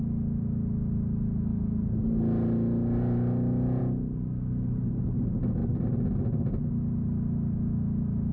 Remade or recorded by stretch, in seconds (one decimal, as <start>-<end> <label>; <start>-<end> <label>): 0.0-8.3 recorded